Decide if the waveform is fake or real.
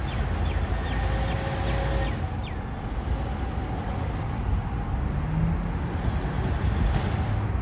real